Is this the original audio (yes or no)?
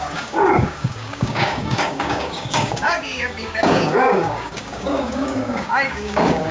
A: no